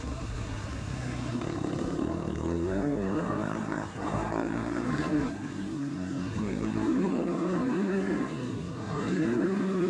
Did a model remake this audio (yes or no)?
yes